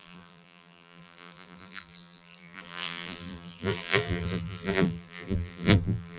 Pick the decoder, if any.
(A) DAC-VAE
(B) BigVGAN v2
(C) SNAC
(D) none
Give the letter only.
B